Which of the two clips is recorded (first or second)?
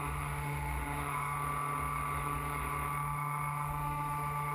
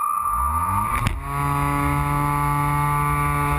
second